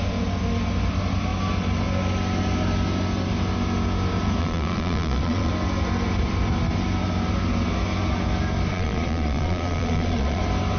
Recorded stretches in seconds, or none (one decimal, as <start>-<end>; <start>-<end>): 0.0-4.4; 5.5-8.7; 10.4-10.8